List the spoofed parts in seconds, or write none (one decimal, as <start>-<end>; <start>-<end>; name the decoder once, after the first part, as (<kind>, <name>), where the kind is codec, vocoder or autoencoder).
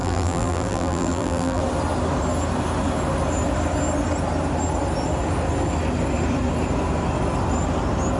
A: 0.0-1.6 (vocoder, BigVGAN v2)